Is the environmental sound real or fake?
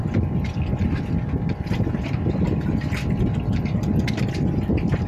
real